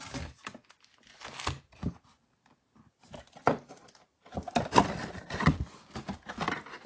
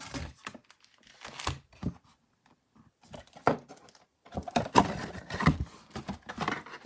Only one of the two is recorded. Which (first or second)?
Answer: first